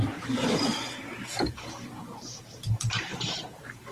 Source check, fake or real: fake